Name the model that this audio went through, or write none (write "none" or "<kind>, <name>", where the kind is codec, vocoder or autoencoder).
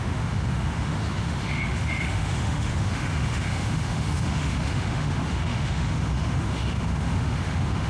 autoencoder, DAC-VAE